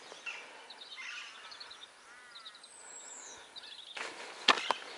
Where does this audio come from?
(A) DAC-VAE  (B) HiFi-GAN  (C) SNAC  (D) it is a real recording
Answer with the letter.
D